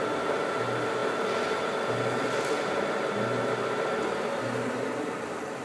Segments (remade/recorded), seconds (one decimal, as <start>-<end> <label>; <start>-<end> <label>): 0.0-5.6 recorded